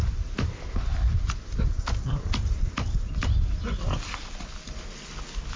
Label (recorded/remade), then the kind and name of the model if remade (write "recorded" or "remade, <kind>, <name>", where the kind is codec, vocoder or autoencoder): recorded